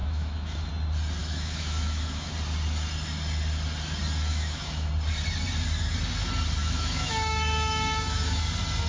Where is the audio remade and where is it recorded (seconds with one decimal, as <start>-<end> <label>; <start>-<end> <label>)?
0.0-0.7 remade; 0.7-1.2 recorded; 1.2-2.3 remade; 2.3-4.3 recorded; 4.3-4.9 remade; 4.9-6.6 recorded; 6.6-8.4 remade; 8.4-8.9 recorded